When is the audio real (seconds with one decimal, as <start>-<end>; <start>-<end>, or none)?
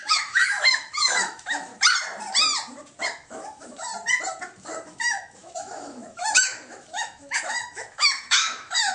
1.7-3.0; 3.9-4.6